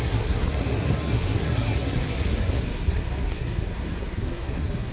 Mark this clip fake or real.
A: fake